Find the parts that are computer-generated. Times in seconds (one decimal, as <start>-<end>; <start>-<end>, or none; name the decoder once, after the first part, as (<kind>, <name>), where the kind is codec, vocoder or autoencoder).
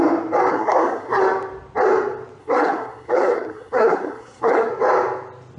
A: 0.5-1.2 (codec, SNAC); 2.4-4.7